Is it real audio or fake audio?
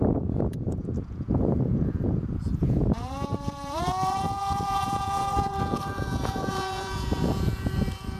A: fake